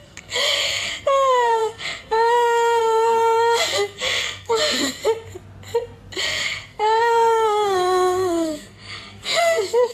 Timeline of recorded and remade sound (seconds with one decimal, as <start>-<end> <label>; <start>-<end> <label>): 0.0-5.0 remade; 5.0-6.2 recorded; 6.2-9.9 remade